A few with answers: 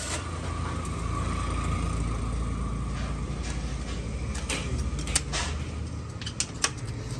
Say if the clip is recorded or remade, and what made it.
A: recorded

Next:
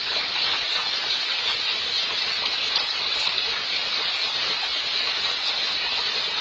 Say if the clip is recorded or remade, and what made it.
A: recorded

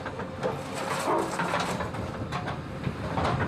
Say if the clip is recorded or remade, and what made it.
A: recorded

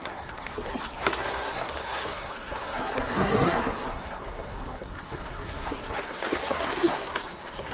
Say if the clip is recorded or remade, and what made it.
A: remade, codec, SNAC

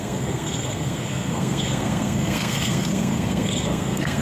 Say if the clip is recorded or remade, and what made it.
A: remade, codec, SNAC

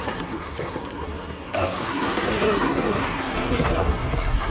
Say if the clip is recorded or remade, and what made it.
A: remade, codec, SNAC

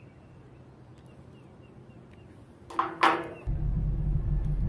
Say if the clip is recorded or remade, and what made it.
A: recorded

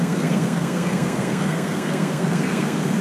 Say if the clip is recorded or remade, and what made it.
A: remade, codec, SNAC